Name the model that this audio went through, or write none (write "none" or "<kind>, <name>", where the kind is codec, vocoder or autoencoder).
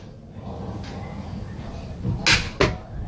none